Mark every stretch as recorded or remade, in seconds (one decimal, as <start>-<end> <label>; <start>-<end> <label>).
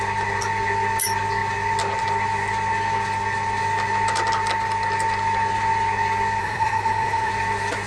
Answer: 0.0-6.4 recorded; 6.4-7.3 remade; 7.3-7.9 recorded